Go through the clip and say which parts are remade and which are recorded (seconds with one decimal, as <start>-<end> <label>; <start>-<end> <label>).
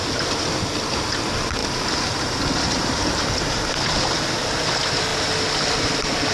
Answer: 0.0-6.3 recorded